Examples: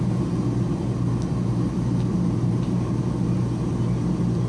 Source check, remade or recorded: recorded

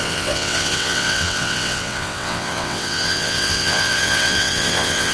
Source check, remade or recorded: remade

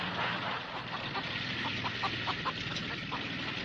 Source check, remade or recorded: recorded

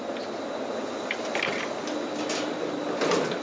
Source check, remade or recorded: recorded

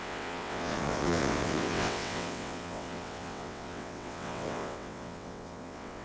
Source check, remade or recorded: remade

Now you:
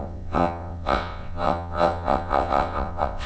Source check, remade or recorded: remade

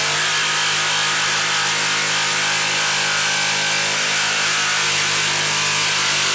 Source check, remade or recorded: recorded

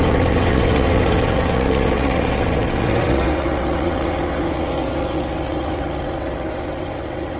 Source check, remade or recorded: remade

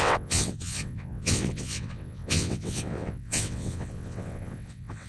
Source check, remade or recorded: remade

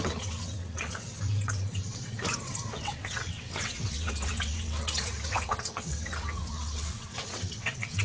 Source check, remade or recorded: remade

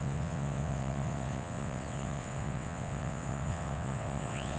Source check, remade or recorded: remade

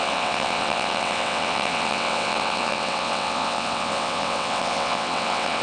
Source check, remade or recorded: remade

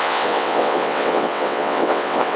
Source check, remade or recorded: remade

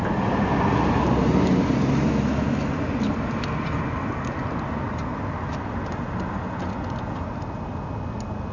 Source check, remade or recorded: recorded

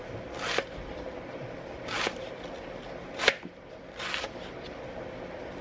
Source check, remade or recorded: recorded